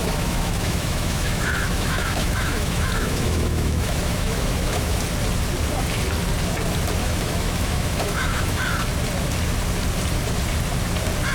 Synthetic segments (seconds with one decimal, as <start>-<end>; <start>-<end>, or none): 0.0-5.0; 7.0-8.6